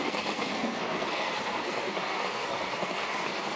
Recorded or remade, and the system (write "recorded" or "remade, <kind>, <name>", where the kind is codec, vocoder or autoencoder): remade, codec, SNAC